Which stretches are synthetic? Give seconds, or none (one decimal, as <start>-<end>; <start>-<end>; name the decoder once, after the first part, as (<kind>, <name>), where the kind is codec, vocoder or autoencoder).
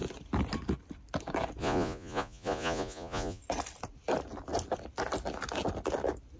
1.6-3.4 (vocoder, Vocos)